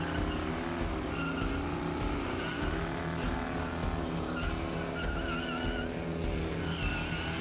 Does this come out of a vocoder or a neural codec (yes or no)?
no